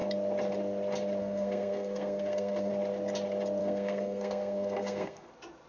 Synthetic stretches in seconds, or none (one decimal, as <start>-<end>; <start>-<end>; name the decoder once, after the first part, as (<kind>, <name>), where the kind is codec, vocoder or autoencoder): 1.2-2.7 (codec, SNAC); 3.6-5.3